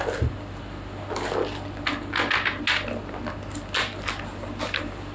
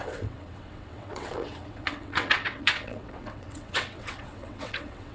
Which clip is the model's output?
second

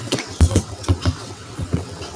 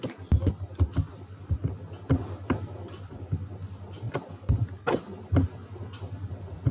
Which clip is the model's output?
first